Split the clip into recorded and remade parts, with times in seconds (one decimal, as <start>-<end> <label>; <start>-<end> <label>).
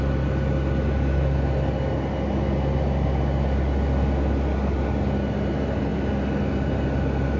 0.0-7.4 recorded